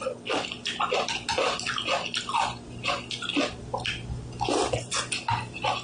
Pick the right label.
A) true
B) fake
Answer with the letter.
A